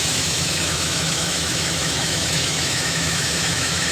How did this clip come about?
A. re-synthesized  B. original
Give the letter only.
A